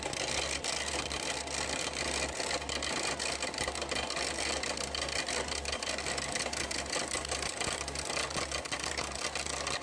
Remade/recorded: recorded